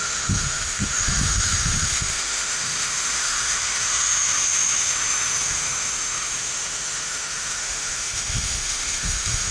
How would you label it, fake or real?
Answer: fake